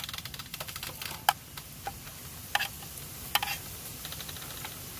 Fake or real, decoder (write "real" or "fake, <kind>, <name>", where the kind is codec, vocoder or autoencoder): real